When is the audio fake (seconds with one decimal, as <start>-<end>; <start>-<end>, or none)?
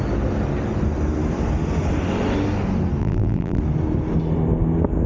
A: 3.0-3.6